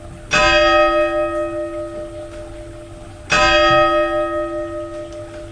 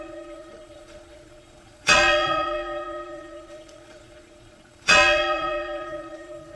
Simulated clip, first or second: second